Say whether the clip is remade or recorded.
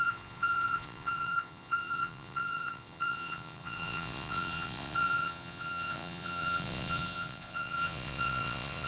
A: remade